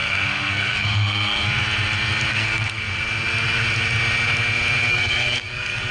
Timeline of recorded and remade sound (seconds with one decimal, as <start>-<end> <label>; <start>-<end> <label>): 0.0-1.4 remade; 1.4-2.3 recorded; 2.3-2.9 remade; 2.9-4.9 recorded; 4.9-5.9 remade